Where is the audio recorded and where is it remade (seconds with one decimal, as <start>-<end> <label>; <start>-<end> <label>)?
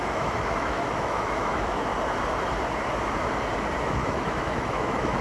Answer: 0.0-1.9 remade; 1.9-3.8 recorded; 3.8-5.2 remade